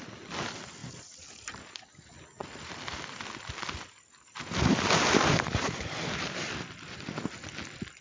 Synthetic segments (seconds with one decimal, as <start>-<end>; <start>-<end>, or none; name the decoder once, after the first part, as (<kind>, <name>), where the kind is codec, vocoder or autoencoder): 0.8-1.3 (vocoder, BigVGAN v2); 2.4-7.2

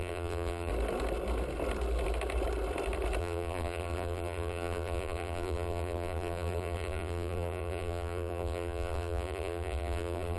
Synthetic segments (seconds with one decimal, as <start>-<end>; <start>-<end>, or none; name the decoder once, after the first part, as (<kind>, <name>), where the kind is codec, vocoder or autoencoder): 0.0-0.7 (vocoder, BigVGAN v2); 3.2-10.4

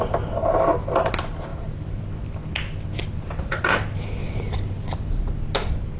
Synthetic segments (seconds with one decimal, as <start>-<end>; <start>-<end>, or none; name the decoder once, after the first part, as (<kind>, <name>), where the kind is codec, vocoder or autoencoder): 1.5-2.0 (vocoder, BigVGAN v2); 4.2-5.2

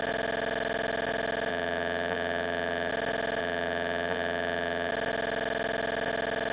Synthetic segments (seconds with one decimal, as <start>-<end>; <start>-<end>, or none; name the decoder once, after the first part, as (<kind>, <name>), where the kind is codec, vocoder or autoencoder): 1.5-2.9 (vocoder, BigVGAN v2); 3.4-4.9

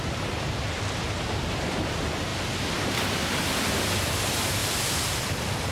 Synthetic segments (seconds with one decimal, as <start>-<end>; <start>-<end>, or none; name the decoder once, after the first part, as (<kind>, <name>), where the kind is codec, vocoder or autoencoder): 4.6-5.3 (vocoder, BigVGAN v2)